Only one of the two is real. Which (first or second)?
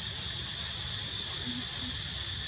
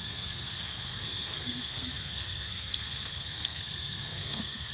first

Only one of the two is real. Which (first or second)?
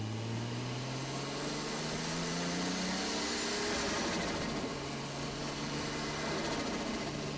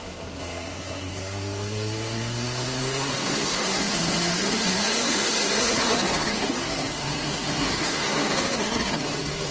first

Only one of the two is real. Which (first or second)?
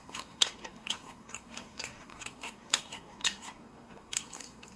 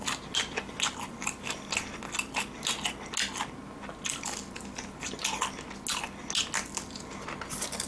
second